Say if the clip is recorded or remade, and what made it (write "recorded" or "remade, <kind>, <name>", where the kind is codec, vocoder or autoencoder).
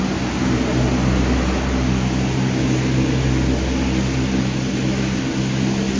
recorded